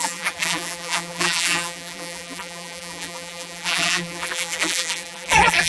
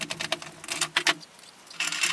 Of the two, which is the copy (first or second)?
first